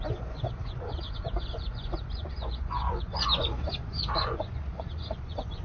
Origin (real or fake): fake